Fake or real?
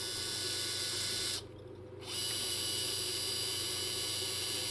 real